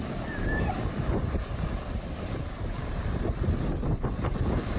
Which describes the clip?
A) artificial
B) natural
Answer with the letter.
B